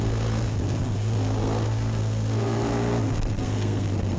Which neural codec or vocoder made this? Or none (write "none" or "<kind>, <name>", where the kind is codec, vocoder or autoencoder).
codec, SNAC